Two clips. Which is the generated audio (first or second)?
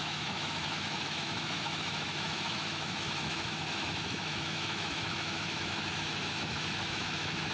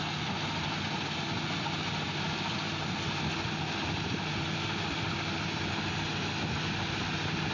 first